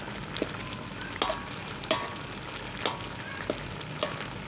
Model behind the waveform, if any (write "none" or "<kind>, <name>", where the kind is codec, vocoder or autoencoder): none